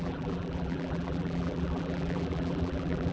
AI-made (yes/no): yes